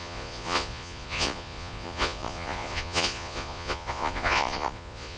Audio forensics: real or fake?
fake